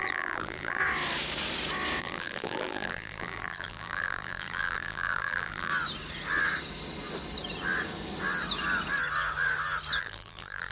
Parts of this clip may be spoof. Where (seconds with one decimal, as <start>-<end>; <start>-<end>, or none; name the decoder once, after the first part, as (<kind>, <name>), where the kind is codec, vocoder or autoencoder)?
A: 0.0-0.8 (vocoder, BigVGAN v2); 2.0-5.7; 10.0-10.7